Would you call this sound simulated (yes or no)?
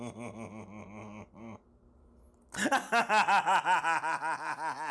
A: no